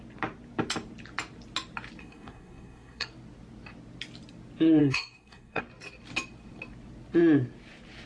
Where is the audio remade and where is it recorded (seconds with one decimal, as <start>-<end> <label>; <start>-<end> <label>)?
0.0-2.0 recorded; 2.0-3.1 remade; 3.1-4.8 recorded; 4.8-5.6 remade; 5.6-8.1 recorded